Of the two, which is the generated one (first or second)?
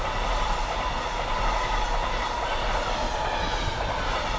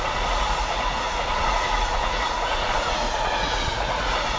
second